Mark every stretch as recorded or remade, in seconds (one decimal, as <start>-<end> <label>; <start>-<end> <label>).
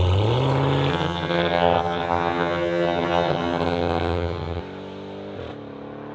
0.0-0.9 recorded; 0.9-4.6 remade; 4.6-6.1 recorded